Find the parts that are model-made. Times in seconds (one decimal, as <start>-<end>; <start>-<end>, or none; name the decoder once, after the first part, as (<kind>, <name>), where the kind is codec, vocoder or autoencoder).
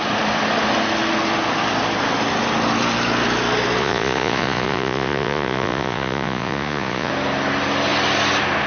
3.8-7.1 (vocoder, Vocos)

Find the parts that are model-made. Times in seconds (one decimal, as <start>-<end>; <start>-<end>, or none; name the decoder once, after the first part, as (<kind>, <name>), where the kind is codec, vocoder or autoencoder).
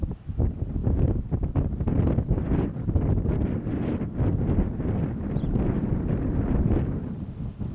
none